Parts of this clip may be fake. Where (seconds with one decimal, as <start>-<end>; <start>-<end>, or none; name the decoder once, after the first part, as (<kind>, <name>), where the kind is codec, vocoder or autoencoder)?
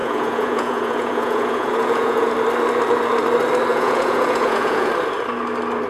0.0-2.3 (vocoder, Vocos); 3.7-4.9